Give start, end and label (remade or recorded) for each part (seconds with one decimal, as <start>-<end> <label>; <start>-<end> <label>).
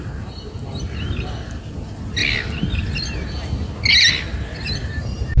0.0-5.4 recorded